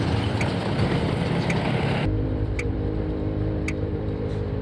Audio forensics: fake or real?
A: fake